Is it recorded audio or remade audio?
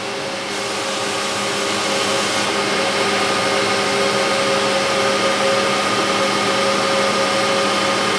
recorded